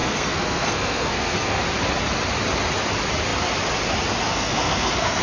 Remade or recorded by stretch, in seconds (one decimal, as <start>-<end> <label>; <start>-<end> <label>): 0.0-1.6 remade; 1.6-4.3 recorded; 4.3-5.2 remade